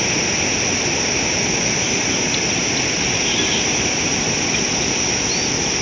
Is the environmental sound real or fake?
real